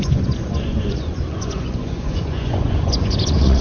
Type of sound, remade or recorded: remade